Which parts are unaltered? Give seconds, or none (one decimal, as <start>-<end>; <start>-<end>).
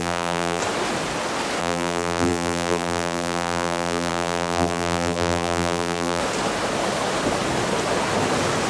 0.6-1.6; 6.2-8.7